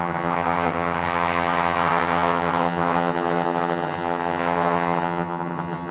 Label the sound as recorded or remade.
remade